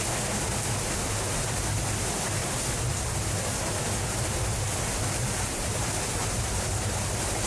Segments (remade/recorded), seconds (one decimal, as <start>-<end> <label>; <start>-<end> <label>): 0.0-2.4 recorded; 2.4-6.7 remade; 6.7-7.5 recorded